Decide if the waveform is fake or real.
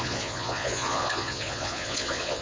fake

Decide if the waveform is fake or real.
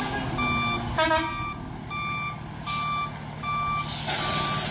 real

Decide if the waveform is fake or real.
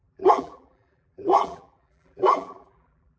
fake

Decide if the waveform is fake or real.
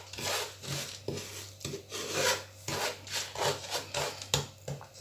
real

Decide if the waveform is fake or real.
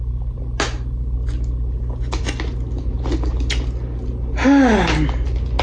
real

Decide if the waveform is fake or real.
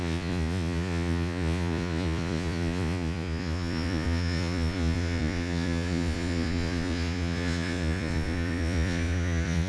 fake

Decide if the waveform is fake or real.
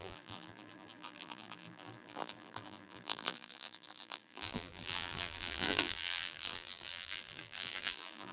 fake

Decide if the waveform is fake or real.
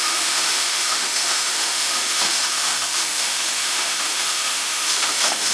fake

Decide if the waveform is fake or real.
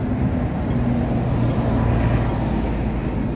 real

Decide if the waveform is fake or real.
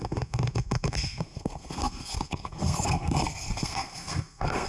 fake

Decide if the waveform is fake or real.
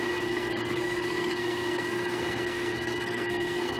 fake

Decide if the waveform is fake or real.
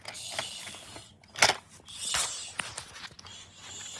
real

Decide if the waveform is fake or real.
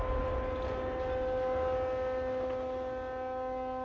real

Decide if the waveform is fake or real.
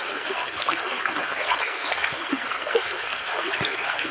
fake